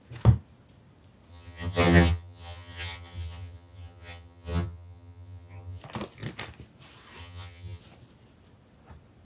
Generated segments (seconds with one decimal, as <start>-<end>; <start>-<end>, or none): 1.3-5.8; 7.2-7.8